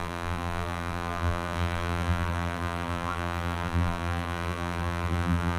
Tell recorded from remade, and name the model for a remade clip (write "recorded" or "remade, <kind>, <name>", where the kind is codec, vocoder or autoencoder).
remade, vocoder, BigVGAN v2